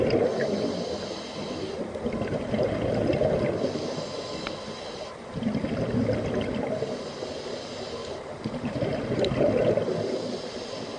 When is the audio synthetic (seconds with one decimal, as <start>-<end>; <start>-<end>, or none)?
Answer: 8.0-8.9